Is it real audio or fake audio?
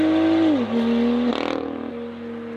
real